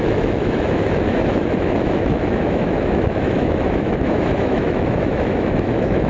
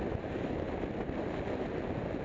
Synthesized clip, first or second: first